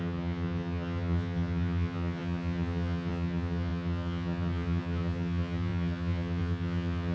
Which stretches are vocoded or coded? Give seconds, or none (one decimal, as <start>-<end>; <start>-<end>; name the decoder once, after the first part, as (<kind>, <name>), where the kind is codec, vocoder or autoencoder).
0.0-7.1 (vocoder, HiFi-GAN)